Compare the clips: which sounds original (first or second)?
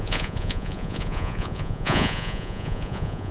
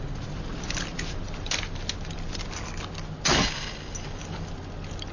second